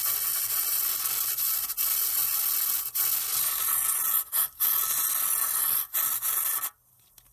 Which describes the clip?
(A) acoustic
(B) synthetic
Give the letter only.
A